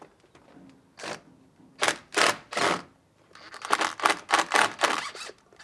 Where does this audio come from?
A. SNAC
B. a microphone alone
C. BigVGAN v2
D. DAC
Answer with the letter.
B